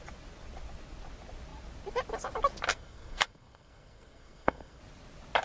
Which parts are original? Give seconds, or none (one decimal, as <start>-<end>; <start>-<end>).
0.0-2.7; 4.8-5.4